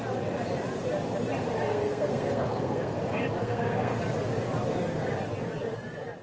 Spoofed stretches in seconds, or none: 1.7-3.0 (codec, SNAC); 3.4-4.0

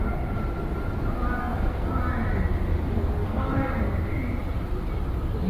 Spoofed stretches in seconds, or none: 1.4-2.0 (codec, SNAC); 3.2-4.1